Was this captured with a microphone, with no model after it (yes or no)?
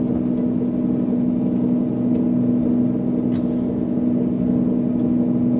yes